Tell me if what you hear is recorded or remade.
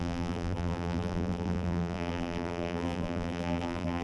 remade